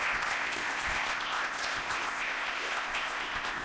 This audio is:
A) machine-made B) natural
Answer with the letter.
A